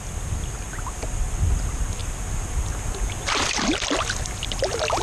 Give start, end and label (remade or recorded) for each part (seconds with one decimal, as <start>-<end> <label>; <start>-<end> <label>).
0.0-5.0 recorded